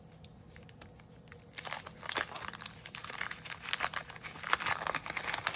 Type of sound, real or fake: real